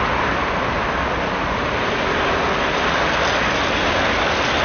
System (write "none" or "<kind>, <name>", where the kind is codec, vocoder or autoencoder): none